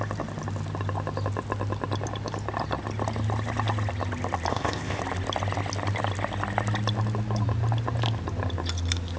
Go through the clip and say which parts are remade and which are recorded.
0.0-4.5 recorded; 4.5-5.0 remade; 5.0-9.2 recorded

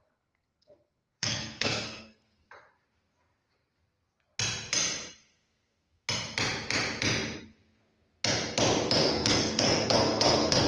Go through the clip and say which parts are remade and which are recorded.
0.0-2.5 remade; 2.5-9.0 recorded; 9.0-10.7 remade

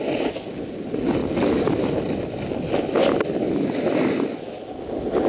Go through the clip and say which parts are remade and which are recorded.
0.0-5.3 recorded

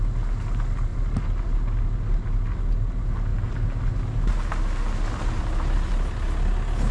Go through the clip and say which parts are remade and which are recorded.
0.0-6.9 recorded

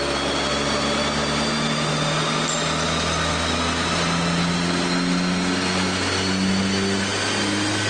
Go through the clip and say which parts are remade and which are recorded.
0.0-7.9 recorded

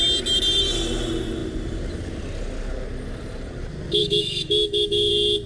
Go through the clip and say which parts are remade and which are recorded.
0.0-4.0 recorded; 4.0-5.1 remade; 5.1-5.5 recorded

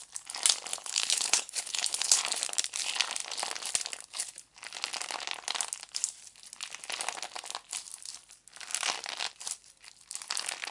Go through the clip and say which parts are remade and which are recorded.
0.0-0.7 recorded; 0.7-2.2 remade; 2.2-10.7 recorded

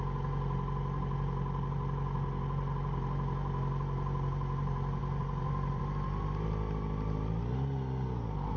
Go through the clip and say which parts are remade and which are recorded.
0.0-5.0 recorded; 5.0-5.8 remade; 5.8-8.6 recorded